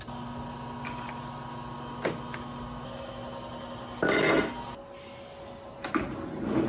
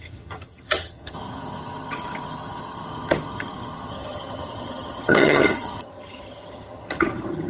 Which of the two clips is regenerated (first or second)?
second